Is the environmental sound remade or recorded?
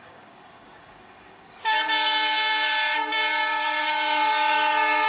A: remade